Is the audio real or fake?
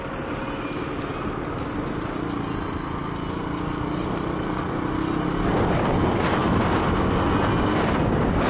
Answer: real